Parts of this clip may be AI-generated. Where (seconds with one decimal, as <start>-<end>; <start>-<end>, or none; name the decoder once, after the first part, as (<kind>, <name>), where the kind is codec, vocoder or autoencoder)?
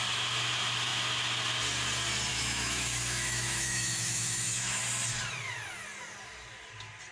2.3-4.8 (autoencoder, DAC-VAE)